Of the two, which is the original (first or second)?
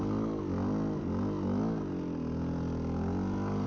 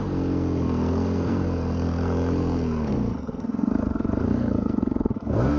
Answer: first